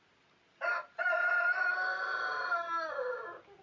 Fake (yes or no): no